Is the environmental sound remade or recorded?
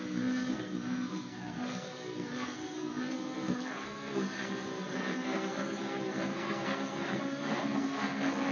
remade